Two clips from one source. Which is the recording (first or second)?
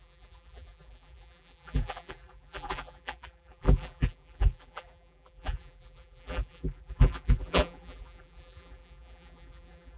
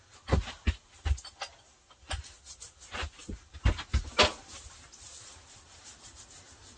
second